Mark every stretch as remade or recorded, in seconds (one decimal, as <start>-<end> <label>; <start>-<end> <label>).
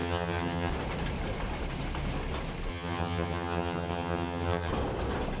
0.0-0.7 remade; 0.7-2.7 recorded; 2.7-4.7 remade; 4.7-5.4 recorded